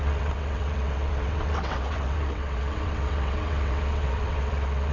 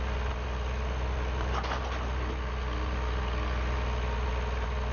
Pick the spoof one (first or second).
first